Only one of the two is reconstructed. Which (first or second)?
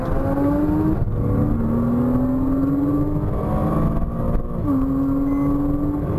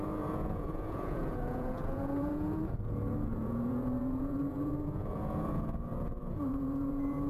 second